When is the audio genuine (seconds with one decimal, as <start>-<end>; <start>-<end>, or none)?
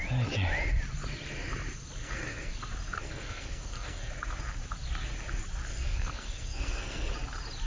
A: 0.0-2.0; 2.5-3.0; 4.1-5.7; 7.1-7.7